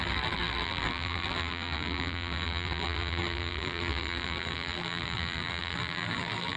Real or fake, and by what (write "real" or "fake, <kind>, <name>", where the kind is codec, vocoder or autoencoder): fake, vocoder, BigVGAN v2